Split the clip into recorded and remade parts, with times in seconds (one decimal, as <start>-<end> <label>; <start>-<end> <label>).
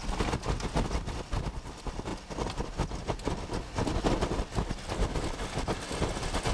0.0-6.5 recorded